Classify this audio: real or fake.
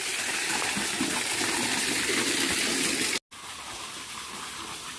real